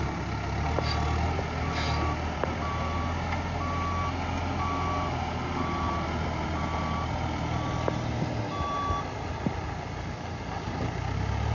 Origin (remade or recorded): recorded